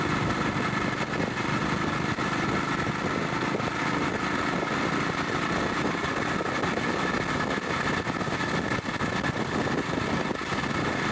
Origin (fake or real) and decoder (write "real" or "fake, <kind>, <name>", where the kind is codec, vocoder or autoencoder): real